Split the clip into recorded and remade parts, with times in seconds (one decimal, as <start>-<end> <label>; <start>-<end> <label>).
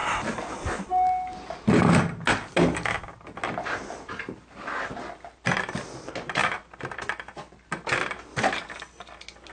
0.0-9.5 recorded